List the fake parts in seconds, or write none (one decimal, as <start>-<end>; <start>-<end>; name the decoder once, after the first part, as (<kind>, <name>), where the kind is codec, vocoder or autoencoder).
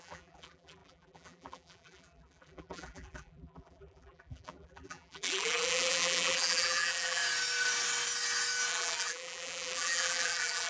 0.0-7.2 (vocoder, BigVGAN v2); 8.7-10.7